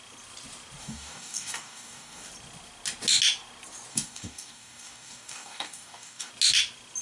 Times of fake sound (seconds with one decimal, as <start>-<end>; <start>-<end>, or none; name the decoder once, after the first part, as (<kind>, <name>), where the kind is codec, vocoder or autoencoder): 0.8-2.3 (codec, DAC); 3.9-6.3